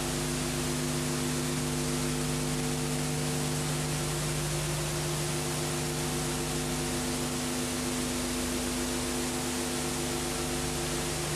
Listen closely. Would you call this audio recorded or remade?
recorded